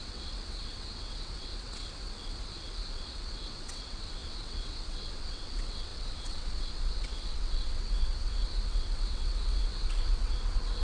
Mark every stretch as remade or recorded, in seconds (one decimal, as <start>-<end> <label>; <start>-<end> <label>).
0.0-10.8 remade